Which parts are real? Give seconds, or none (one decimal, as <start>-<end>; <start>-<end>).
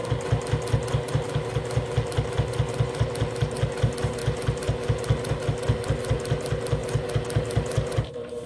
0.0-8.5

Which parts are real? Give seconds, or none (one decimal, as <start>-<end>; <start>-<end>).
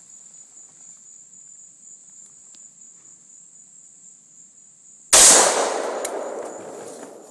0.0-7.3